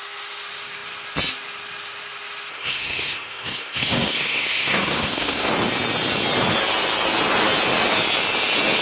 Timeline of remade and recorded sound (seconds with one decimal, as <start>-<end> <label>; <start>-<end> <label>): 0.0-2.5 recorded; 2.5-5.5 remade; 5.5-8.8 recorded